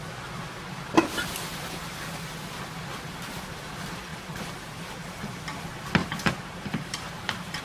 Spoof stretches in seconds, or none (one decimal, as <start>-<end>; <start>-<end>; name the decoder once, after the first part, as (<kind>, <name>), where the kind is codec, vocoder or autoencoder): 1.5-2.0 (vocoder, BigVGAN v2); 6.0-7.6